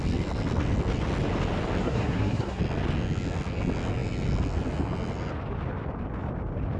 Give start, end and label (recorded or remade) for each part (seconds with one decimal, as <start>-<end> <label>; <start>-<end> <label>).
0.0-1.8 recorded; 1.8-2.6 remade; 2.6-6.8 recorded